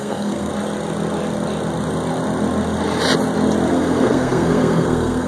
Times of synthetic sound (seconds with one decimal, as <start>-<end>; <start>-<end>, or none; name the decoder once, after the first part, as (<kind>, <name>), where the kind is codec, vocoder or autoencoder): 0.0-0.5 (codec, SNAC); 3.7-5.3